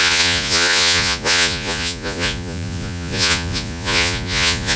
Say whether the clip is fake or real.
fake